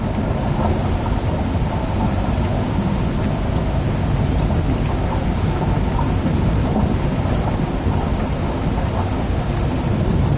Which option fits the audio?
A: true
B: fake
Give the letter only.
A